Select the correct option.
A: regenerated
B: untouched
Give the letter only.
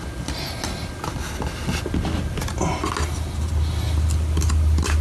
B